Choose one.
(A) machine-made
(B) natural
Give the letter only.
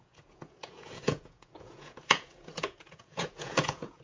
A